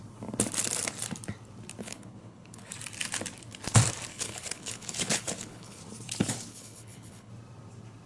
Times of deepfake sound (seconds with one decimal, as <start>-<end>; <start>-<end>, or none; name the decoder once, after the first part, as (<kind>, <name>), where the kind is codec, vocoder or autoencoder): 1.8-2.7 (codec, HILCodec); 4.1-5.8; 6.5-7.3